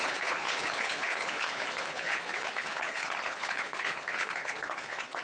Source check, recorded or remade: remade